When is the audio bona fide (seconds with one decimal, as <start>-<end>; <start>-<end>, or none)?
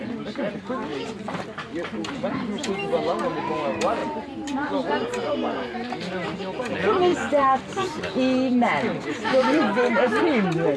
0.0-0.9; 2.3-4.0; 4.7-7.1; 7.6-10.8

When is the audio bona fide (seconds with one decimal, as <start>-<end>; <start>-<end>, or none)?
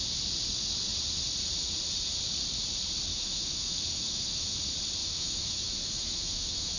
0.0-3.1; 4.6-5.0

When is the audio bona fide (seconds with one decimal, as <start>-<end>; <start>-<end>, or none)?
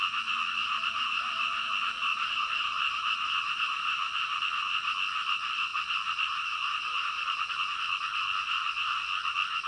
0.0-0.6; 1.7-2.1; 4.4-5.7; 7.5-9.7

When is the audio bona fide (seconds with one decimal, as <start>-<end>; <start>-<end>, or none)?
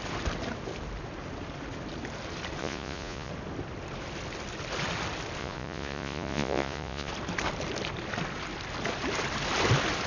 0.0-2.6; 3.3-5.4; 7.1-10.1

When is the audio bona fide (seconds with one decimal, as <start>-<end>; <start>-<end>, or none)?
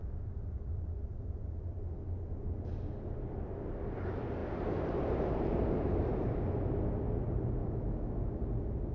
0.0-7.6; 8.4-8.9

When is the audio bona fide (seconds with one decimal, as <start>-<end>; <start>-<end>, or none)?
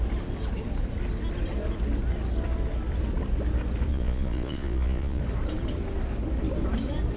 0.0-3.9; 5.2-7.2